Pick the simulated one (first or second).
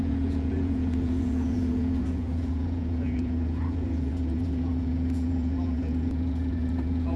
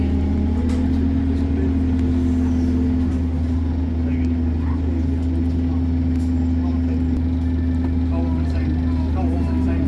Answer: first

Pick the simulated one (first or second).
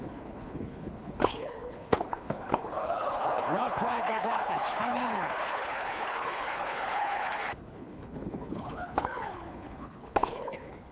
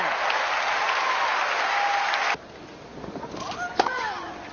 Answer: first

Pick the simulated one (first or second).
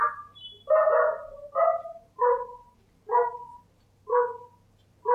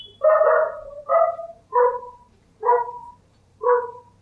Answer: second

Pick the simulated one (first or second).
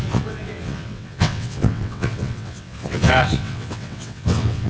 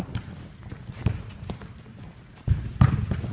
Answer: first